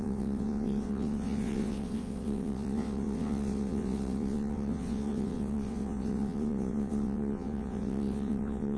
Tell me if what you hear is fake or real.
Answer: fake